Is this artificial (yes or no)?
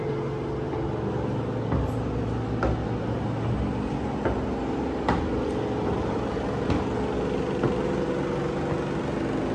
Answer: no